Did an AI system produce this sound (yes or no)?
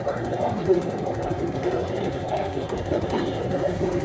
yes